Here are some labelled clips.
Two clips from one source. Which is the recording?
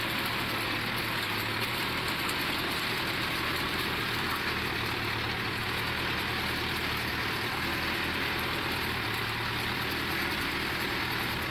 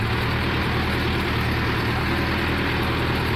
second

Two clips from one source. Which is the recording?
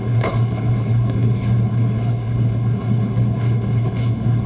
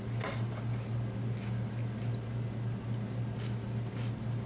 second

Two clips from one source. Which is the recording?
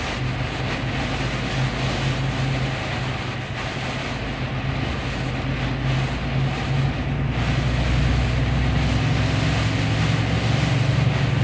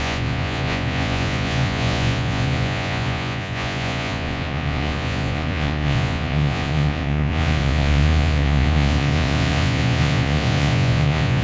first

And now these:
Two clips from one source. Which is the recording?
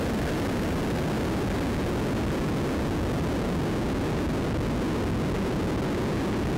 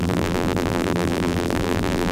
first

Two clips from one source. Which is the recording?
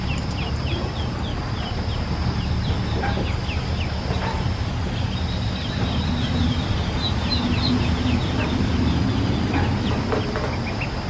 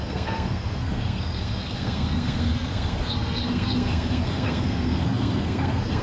first